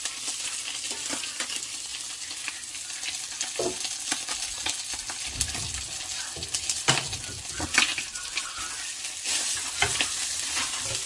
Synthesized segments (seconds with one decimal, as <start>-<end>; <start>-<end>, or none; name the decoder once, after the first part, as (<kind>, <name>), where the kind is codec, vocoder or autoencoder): 7.9-8.6 (vocoder, BigVGAN v2)

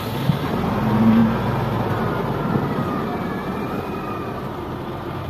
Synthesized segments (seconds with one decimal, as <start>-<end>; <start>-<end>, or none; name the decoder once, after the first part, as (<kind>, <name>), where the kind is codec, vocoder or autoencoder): 0.0-1.2 (vocoder, BigVGAN v2); 1.9-5.3

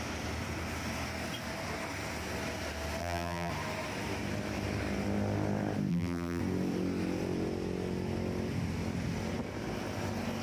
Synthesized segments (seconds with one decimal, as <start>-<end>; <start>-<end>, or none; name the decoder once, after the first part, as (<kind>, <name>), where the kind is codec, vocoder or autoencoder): 3.0-3.5 (vocoder, BigVGAN v2); 5.9-6.4

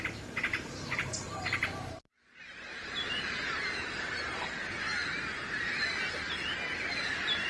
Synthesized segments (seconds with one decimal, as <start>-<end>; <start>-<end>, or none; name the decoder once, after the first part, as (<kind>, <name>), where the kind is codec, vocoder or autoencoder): 0.5-4.7 (vocoder, BigVGAN v2)

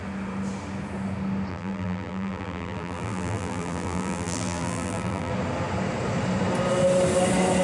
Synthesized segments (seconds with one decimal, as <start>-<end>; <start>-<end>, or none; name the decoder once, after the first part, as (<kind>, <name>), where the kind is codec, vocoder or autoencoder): 1.5-5.3 (vocoder, BigVGAN v2)

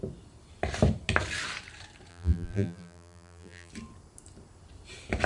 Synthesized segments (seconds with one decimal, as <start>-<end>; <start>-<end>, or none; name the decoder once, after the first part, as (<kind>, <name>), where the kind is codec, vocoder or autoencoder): 2.1-3.7 (vocoder, BigVGAN v2)